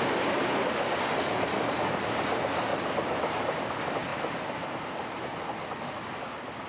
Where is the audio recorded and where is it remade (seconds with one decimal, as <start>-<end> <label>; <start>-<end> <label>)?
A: 0.0-2.7 recorded; 2.7-3.6 remade; 3.6-4.1 recorded; 4.1-5.6 remade; 5.6-6.7 recorded